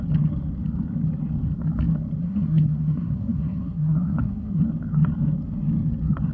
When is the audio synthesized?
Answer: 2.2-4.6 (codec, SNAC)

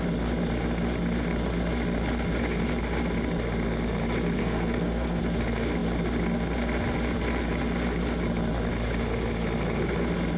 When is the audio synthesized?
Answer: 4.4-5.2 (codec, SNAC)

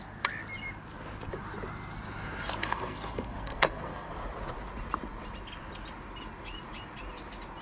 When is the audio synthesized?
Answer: 2.6-4.1 (codec, SNAC)

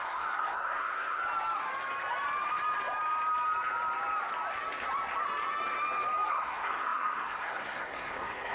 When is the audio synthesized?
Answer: 0.0-1.2 (codec, SNAC); 6.3-8.5

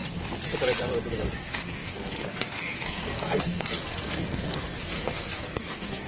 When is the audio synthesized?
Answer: 1.1-6.1 (codec, SNAC)